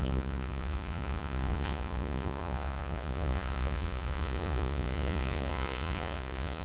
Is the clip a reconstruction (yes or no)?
yes